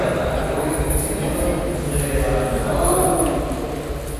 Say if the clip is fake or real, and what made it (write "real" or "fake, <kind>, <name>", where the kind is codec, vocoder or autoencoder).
real